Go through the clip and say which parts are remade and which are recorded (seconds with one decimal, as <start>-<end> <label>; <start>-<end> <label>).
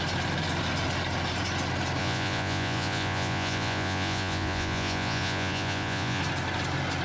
0.0-2.0 recorded; 2.0-6.2 remade; 6.2-7.0 recorded